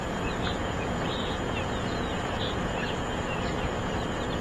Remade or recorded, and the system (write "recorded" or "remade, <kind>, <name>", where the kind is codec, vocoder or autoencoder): remade, vocoder, Vocos